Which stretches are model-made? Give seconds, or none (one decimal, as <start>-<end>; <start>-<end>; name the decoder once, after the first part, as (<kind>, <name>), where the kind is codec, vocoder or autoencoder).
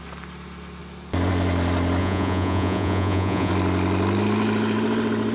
2.0-3.5 (vocoder, Vocos)